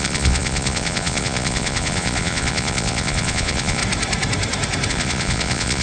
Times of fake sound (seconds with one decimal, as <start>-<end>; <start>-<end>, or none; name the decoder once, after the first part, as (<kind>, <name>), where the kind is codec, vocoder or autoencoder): 0.0-3.8 (vocoder, Vocos); 4.9-5.8